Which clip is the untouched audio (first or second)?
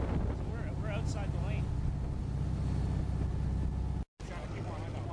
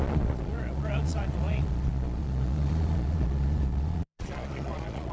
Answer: first